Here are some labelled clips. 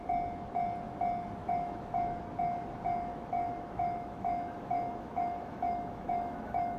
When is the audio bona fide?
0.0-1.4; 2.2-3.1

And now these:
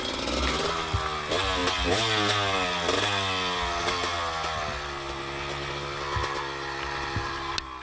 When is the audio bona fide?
0.0-7.8

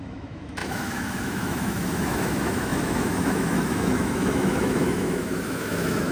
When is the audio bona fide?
none

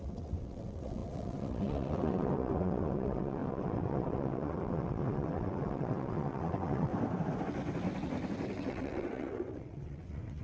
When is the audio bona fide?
6.9-8.5

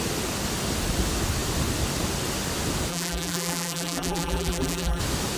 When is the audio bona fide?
0.0-2.9; 5.0-5.4

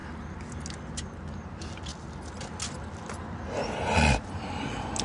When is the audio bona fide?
0.0-5.0

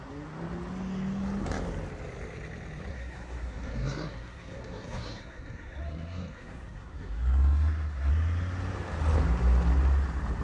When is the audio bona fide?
0.0-2.9; 8.1-10.4